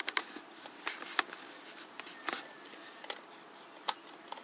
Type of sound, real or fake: real